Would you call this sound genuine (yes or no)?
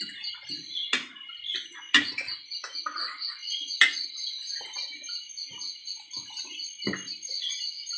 yes